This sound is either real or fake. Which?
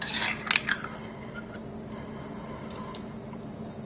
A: real